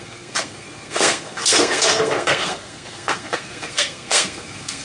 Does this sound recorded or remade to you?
remade